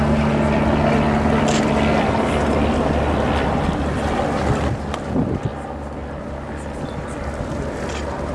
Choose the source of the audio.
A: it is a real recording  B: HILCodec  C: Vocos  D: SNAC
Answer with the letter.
A